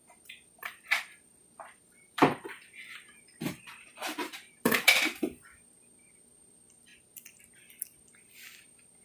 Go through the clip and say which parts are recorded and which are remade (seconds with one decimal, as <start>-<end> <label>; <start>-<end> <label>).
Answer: 0.0-9.0 remade